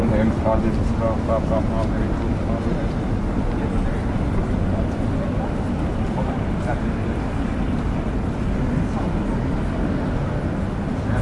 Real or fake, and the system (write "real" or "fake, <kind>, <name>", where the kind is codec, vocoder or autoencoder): real